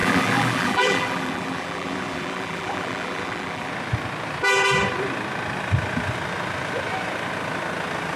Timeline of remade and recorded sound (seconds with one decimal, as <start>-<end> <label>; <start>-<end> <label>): 0.0-3.7 remade; 3.7-8.2 recorded